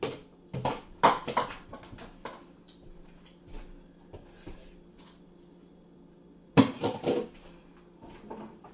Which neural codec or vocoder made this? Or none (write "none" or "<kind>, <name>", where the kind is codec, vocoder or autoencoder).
none